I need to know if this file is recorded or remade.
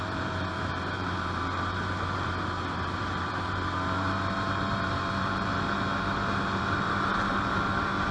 remade